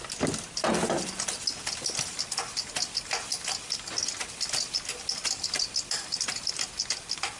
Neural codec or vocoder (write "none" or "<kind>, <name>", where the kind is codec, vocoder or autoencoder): none